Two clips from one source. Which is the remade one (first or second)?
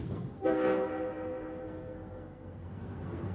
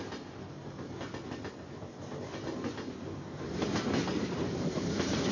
first